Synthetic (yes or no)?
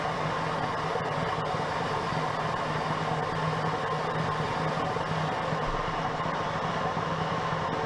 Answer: no